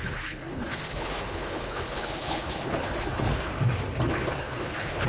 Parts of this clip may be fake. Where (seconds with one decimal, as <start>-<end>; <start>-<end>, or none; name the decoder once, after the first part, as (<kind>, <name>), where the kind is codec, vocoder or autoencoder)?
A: 0.0-3.5 (codec, HILCodec); 4.1-5.1